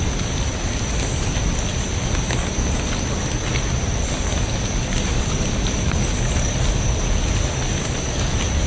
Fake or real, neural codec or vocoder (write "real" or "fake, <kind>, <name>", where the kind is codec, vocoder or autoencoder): real